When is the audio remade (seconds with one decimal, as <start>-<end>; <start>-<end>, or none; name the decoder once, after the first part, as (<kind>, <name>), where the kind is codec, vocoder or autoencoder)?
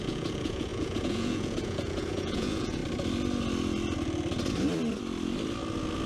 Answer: 0.0-2.8 (vocoder, Vocos)